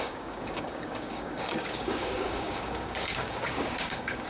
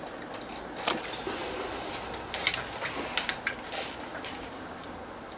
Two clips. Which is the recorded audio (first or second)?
second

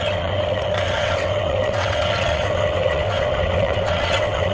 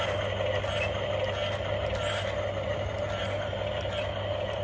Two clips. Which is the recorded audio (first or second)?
second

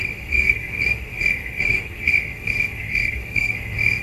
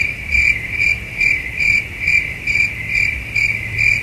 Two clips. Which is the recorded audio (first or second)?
second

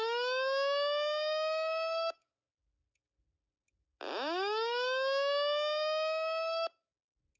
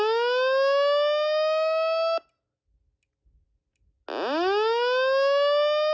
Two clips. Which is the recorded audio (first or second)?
second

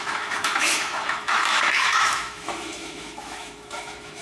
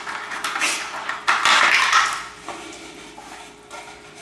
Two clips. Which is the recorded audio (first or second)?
second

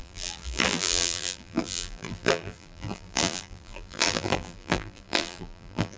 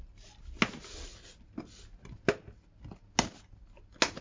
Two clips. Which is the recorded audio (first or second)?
second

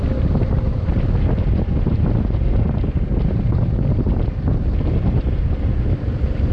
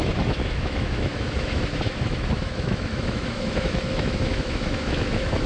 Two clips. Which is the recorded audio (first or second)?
first